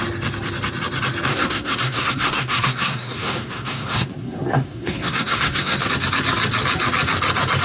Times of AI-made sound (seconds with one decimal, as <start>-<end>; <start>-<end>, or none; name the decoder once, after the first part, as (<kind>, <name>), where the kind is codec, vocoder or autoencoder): 1.3-5.9 (codec, SNAC)